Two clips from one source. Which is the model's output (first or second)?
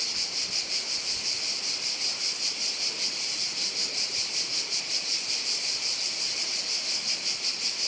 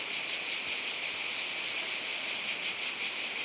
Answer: first